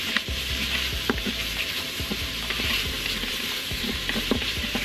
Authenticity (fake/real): fake